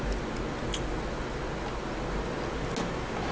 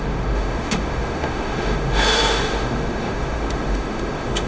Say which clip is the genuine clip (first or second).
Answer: first